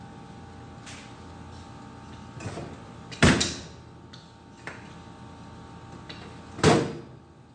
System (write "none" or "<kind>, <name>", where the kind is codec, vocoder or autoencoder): none